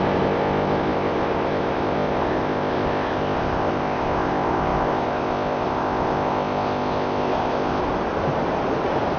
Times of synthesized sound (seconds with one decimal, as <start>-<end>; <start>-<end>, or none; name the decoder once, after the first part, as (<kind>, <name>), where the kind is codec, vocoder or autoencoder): 0.0-7.8 (codec, ZipCodec)